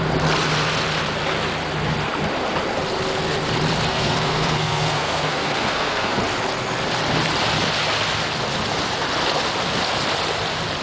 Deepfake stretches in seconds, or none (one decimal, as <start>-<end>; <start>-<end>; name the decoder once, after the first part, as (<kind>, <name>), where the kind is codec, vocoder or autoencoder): 3.9-6.2 (codec, SNAC)